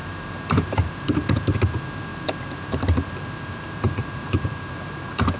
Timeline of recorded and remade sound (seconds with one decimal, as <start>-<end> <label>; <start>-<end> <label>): 0.0-1.2 remade; 1.2-2.1 recorded; 2.1-5.4 remade